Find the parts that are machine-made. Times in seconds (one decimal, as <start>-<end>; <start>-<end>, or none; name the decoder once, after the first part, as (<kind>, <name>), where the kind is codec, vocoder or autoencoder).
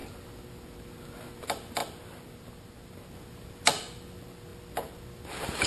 none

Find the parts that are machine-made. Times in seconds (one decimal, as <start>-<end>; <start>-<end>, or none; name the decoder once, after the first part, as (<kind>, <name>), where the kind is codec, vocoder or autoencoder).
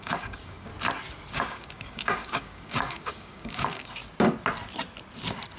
0.0-0.7 (codec, DAC); 1.3-4.0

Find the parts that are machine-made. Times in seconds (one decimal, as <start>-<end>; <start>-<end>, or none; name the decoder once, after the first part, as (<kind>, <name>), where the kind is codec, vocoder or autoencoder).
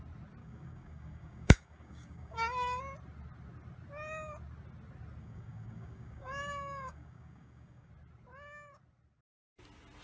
0.4-2.8 (codec, DAC); 5.2-7.9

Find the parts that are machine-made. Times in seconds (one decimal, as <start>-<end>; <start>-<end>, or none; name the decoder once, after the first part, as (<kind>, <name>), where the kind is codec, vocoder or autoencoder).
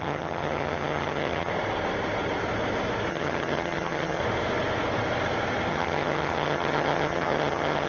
0.0-1.5 (vocoder, HiFi-GAN); 3.1-4.2; 5.7-7.9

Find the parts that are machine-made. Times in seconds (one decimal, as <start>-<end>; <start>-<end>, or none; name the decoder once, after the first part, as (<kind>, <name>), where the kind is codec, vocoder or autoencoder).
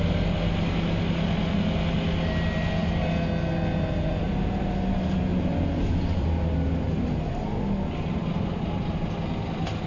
5.3-6.3 (vocoder, BigVGAN v2)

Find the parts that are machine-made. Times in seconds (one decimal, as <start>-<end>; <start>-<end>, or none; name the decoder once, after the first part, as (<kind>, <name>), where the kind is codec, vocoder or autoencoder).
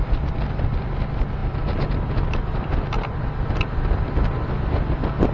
none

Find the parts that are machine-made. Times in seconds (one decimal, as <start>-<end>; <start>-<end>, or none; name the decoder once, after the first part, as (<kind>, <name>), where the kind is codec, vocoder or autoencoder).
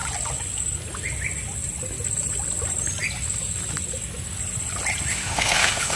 5.1-6.0 (autoencoder, DAC-VAE)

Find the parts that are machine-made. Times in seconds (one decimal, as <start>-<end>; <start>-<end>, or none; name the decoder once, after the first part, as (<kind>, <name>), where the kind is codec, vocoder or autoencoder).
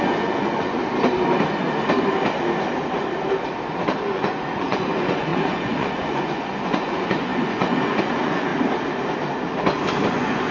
0.0-0.8 (vocoder, Vocos); 4.0-8.5; 10.1-10.5